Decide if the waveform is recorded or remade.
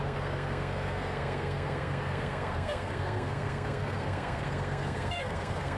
remade